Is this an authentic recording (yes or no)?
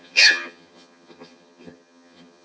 no